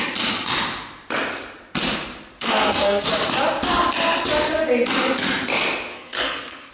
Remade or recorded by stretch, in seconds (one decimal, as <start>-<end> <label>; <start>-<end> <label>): 0.0-2.3 recorded; 2.3-3.1 remade; 3.1-5.9 recorded; 5.9-6.7 remade